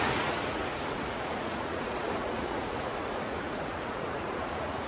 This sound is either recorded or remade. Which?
remade